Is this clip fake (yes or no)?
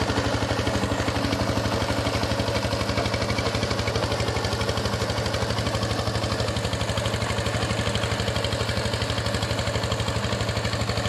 no